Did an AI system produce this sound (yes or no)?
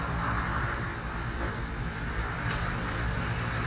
no